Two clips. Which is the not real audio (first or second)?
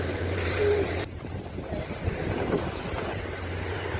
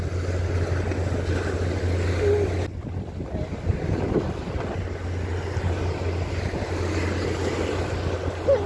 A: first